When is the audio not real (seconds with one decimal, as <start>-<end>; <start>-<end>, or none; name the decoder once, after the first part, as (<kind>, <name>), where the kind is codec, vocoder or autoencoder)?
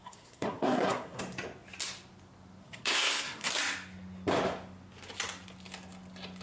0.0-1.2 (codec, SNAC); 2.6-3.5